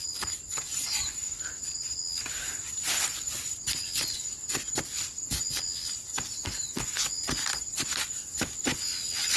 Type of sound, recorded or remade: recorded